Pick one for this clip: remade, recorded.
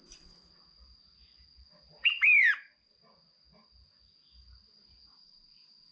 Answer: recorded